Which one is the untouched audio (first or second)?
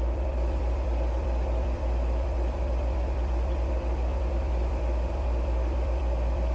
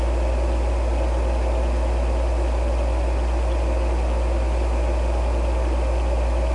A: second